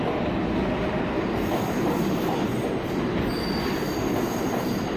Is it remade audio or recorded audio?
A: recorded